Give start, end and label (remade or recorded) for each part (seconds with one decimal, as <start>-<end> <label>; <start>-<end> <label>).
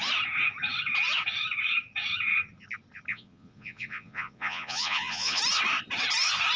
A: 0.0-3.1 recorded; 3.1-5.4 remade; 5.4-6.6 recorded